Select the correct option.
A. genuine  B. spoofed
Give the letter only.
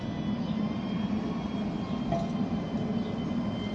A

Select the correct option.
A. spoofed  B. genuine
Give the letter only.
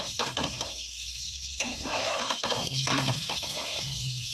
A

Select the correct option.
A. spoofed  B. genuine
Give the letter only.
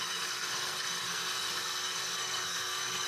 A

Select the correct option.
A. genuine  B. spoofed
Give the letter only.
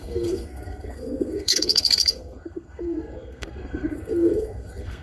B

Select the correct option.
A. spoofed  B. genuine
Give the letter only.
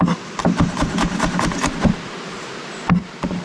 B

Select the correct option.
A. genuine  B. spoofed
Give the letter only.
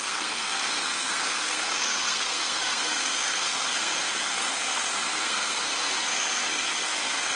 B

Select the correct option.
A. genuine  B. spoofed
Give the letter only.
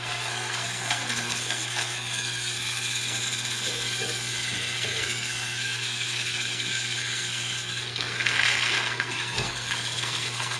B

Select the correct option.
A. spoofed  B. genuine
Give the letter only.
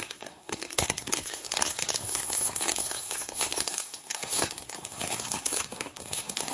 A